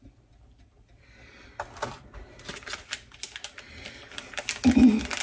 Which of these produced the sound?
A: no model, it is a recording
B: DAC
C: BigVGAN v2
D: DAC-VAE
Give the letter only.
A